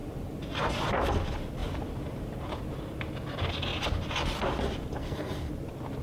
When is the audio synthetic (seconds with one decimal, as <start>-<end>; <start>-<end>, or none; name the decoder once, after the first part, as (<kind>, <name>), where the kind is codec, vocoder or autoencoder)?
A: 5.0-5.5 (codec, SNAC)